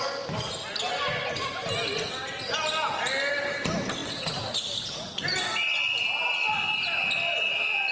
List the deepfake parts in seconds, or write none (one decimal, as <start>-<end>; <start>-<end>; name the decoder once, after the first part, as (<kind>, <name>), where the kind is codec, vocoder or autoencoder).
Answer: none